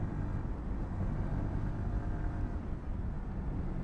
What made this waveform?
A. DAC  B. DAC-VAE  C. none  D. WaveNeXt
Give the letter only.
C